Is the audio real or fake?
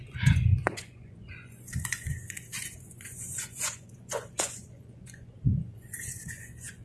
fake